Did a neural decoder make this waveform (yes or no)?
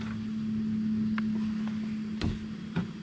no